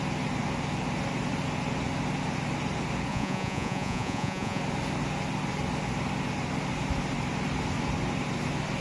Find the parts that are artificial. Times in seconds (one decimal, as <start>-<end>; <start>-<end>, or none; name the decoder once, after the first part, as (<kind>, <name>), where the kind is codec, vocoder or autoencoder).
3.1-4.6 (vocoder, Vocos)